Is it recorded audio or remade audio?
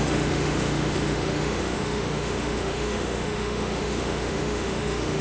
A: remade